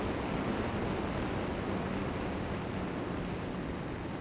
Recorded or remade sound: recorded